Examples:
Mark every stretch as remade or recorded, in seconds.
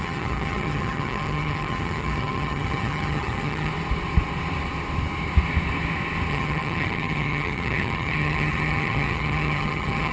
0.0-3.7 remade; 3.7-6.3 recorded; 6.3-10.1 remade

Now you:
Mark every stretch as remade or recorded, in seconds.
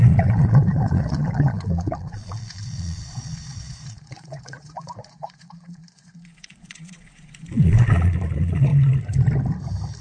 0.0-8.7 remade; 8.7-10.0 recorded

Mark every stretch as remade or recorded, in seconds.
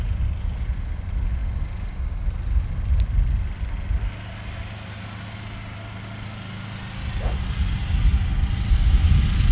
0.0-9.5 recorded